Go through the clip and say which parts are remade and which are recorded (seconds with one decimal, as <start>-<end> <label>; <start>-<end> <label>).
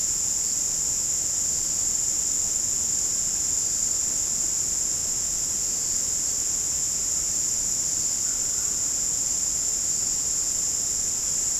0.0-11.6 recorded